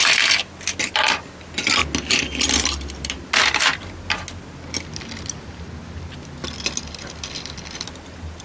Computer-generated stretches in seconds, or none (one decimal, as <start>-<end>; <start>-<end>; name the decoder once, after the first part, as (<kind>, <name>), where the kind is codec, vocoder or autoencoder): none